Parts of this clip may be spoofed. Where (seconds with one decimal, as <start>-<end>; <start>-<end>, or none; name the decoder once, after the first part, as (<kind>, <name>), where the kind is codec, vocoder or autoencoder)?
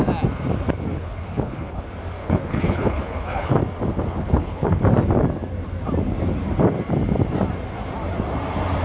0.9-1.8 (codec, HILCodec); 2.2-3.5; 4.1-4.8